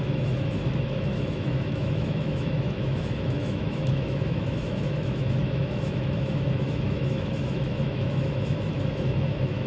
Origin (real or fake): fake